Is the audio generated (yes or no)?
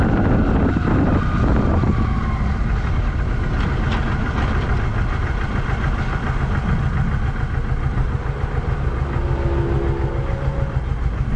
no